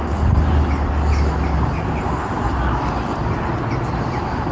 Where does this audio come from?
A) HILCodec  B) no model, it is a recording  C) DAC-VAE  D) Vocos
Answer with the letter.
B